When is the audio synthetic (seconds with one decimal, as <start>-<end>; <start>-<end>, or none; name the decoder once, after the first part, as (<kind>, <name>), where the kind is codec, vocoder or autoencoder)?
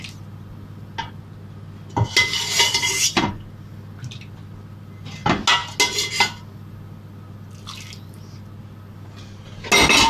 2.7-3.3 (vocoder, BigVGAN v2)